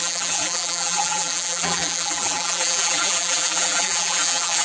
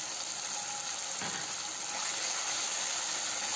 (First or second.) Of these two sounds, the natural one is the second